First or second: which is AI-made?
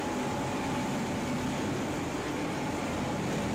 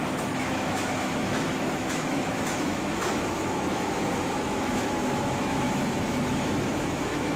second